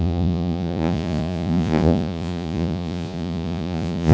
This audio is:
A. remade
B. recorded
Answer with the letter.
A